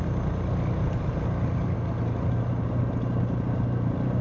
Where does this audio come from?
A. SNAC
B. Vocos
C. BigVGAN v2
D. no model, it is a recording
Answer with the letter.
D